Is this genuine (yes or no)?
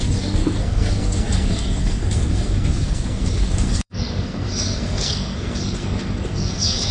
no